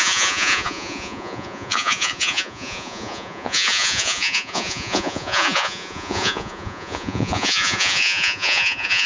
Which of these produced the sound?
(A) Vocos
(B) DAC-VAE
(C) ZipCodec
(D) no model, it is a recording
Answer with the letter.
A